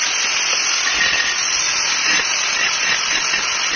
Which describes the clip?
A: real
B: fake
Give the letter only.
A